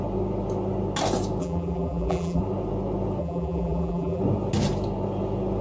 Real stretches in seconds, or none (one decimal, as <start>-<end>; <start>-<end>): 0.0-1.4; 2.4-3.2; 4.2-5.6